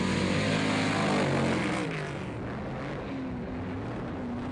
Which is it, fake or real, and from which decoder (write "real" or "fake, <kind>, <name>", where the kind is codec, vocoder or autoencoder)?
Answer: real